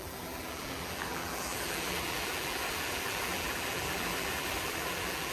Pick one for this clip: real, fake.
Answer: fake